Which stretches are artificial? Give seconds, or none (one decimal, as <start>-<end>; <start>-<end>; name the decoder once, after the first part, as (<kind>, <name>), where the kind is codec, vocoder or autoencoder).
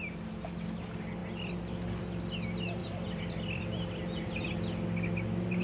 1.2-2.2 (vocoder, BigVGAN v2); 2.8-4.5